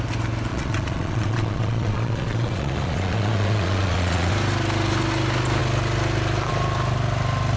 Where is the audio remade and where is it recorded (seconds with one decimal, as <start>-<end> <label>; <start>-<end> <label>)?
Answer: 0.0-0.5 recorded; 0.5-4.3 remade; 4.3-7.6 recorded